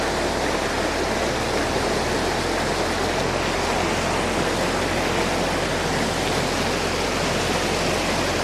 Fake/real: real